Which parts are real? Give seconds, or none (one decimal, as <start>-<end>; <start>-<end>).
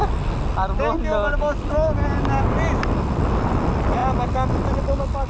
0.0-5.3